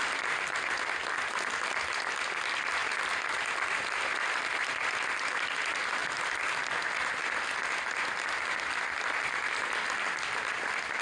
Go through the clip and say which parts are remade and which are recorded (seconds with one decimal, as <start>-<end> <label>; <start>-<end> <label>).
0.0-2.8 recorded; 2.8-4.9 remade; 4.9-11.0 recorded

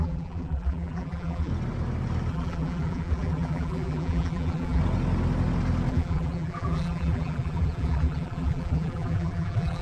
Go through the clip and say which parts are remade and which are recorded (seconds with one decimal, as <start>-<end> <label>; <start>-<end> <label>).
0.0-1.5 remade; 1.5-2.3 recorded; 2.3-4.8 remade; 4.8-5.9 recorded; 5.9-9.8 remade

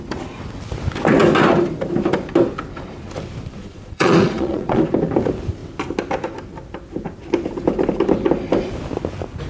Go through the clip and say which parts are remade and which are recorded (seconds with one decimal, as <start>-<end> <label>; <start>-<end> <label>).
0.0-3.6 recorded; 3.6-4.9 remade; 4.9-9.5 recorded